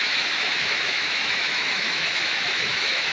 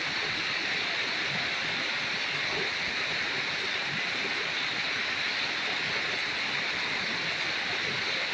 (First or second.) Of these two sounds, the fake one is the first